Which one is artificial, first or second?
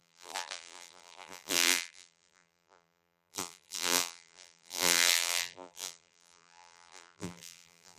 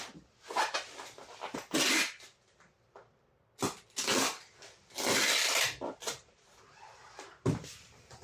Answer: first